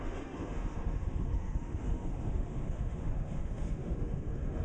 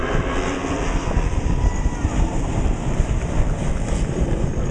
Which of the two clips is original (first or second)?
second